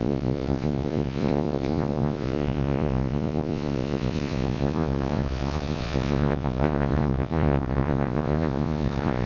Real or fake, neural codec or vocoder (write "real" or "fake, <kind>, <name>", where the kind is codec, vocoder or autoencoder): fake, vocoder, Vocos